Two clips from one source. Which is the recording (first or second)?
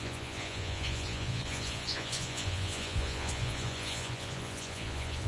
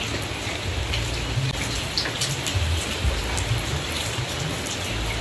second